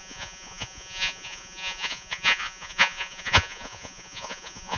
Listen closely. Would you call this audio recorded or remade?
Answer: remade